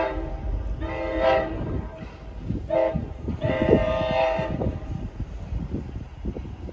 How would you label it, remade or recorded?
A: remade